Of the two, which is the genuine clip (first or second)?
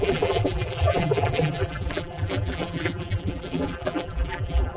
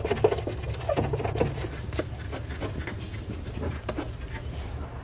second